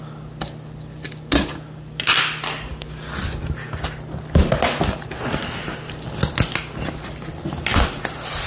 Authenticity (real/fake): real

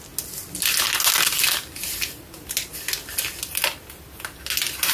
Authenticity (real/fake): real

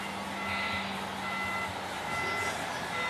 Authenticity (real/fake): real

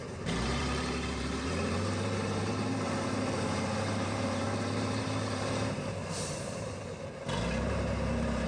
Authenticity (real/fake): fake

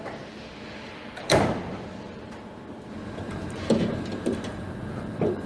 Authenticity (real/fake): fake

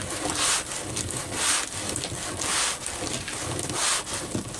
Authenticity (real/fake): real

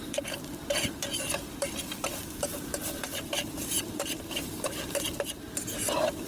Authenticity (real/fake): fake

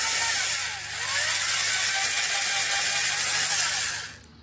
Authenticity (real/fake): real